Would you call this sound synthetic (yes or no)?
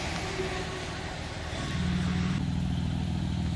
no